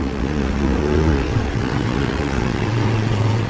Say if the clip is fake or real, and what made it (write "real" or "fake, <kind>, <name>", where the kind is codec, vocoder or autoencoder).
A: fake, vocoder, WaveNeXt